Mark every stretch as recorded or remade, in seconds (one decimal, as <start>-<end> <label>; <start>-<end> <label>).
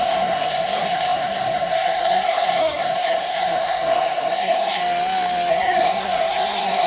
0.0-4.8 remade; 4.8-5.5 recorded; 5.5-6.9 remade